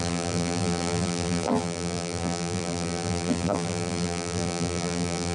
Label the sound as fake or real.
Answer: fake